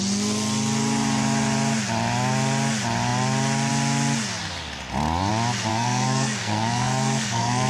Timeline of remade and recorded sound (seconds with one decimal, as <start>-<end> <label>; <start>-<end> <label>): 0.0-5.7 recorded; 5.7-7.7 remade